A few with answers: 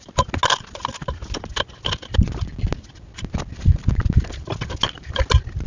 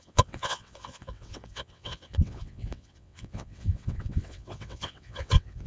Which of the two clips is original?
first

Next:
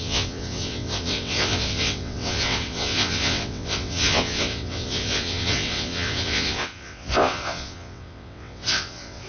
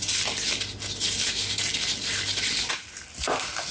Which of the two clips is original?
second